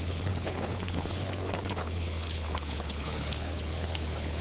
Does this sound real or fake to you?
fake